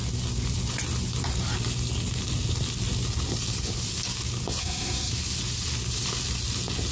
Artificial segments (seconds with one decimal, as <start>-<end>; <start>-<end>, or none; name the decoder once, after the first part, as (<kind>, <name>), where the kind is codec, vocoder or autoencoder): 4.6-5.1 (codec, SNAC)